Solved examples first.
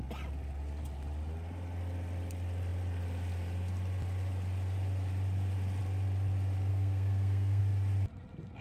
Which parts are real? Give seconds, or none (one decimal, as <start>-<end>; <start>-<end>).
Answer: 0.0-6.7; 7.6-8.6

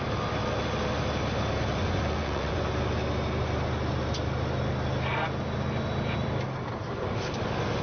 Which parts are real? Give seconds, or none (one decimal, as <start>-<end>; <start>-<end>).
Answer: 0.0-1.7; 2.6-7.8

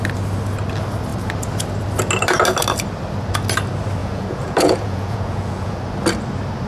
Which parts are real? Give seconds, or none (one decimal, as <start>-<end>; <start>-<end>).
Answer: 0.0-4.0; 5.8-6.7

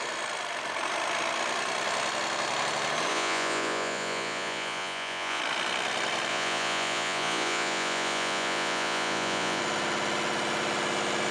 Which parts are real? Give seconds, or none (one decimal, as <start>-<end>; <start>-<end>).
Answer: 0.0-3.1; 5.4-6.3; 9.6-11.3

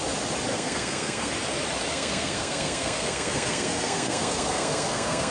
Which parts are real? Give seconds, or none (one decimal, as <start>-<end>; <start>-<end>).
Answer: 0.0-0.5; 1.3-1.9

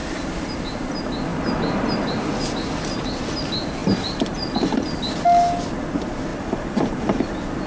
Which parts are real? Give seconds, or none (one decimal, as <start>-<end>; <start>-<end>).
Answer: 0.0-3.8; 4.8-6.3; 7.3-7.7

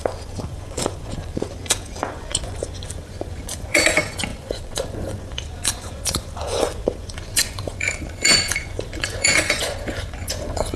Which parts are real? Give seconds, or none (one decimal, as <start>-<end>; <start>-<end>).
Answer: none